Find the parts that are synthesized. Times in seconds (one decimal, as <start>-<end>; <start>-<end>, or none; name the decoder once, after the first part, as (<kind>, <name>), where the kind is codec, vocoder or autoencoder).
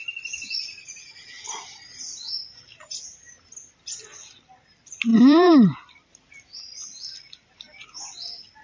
5.1-7.5 (vocoder, BigVGAN v2)